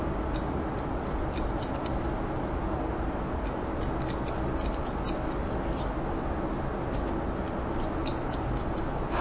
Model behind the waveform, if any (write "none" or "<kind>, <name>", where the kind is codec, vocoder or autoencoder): none